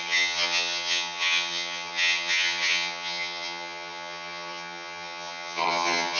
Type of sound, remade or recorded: remade